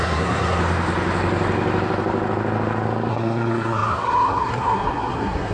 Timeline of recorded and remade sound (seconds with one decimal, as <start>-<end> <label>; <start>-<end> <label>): 0.0-0.6 remade; 0.6-3.1 recorded; 3.1-5.5 remade